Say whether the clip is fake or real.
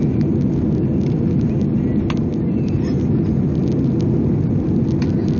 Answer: real